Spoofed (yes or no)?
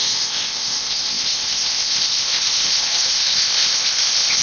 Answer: yes